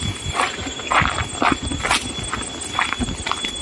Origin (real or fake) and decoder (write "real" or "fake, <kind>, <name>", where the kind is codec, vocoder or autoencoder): real